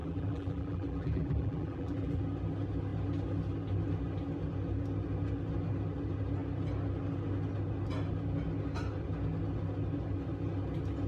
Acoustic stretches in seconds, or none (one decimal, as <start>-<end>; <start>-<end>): 2.2-11.1